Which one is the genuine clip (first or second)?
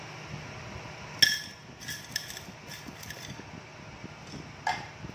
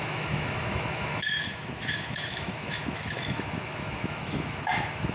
first